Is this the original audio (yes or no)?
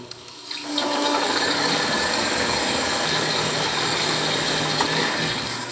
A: no